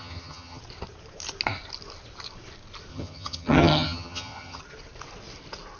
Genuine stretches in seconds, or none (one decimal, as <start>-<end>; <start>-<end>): 0.6-2.9; 4.6-5.8